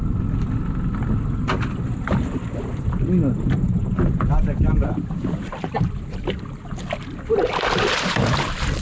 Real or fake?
real